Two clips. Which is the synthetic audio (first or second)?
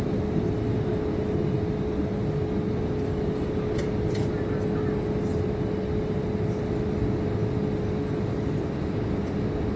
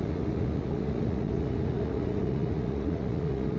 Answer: second